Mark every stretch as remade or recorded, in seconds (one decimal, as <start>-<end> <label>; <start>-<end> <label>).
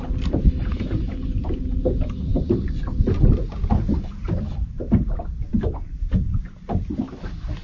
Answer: 0.0-7.6 recorded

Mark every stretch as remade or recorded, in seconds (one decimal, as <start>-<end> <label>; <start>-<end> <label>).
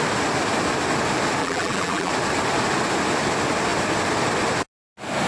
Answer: 0.0-1.4 recorded; 1.4-2.1 remade; 2.1-5.3 recorded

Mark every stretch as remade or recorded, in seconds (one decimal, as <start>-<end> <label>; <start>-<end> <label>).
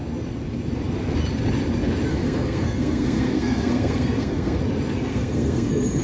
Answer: 0.0-2.1 recorded; 2.1-4.6 remade; 4.6-5.1 recorded; 5.1-6.0 remade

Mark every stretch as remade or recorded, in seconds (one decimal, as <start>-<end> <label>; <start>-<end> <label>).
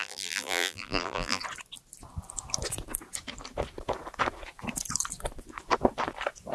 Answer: 0.0-1.4 remade; 1.4-6.5 recorded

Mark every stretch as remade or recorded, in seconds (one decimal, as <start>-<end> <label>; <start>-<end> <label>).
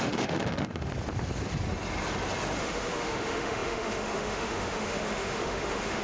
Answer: 0.0-0.9 remade; 0.9-2.6 recorded; 2.6-6.0 remade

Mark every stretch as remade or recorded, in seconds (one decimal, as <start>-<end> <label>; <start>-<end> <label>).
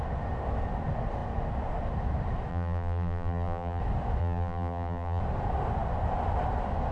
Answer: 0.0-2.5 recorded; 2.5-3.8 remade; 3.8-4.2 recorded; 4.2-5.2 remade; 5.2-6.9 recorded